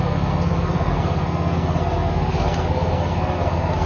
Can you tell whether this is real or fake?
fake